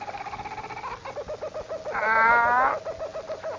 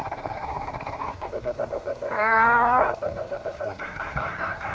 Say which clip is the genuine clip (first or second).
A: first